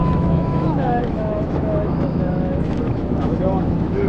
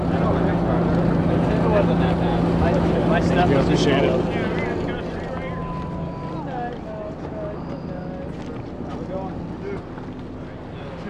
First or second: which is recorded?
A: second